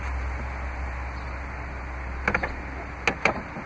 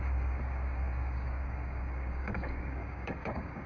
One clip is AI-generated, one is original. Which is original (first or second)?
first